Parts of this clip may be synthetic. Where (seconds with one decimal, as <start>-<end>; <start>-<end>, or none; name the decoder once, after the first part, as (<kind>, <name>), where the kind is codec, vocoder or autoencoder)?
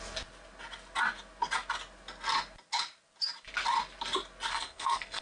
4.5-5.2 (codec, SNAC)